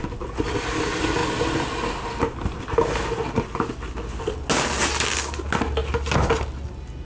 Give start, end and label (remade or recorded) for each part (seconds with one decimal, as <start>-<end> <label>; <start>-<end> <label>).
0.0-7.0 recorded